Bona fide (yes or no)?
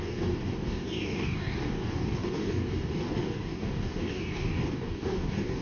no